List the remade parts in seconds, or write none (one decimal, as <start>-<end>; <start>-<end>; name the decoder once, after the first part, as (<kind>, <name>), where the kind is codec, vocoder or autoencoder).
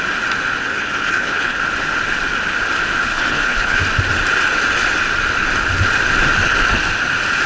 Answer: 0.6-1.6 (codec, HILCodec); 3.1-3.8